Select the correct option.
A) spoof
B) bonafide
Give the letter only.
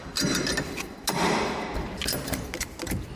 B